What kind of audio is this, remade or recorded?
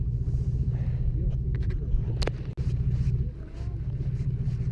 recorded